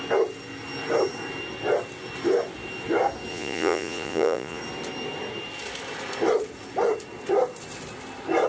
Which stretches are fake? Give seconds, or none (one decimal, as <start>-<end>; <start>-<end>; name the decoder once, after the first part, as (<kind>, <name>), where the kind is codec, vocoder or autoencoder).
3.3-4.6 (vocoder, Vocos)